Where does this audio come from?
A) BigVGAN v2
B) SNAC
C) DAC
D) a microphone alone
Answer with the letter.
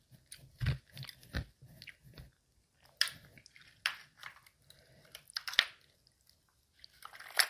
D